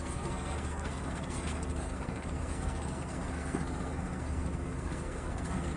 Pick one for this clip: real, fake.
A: fake